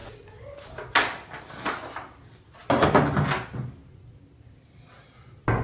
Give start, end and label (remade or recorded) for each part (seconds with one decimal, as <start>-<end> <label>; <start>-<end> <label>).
0.0-5.6 recorded